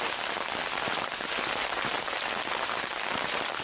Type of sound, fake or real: real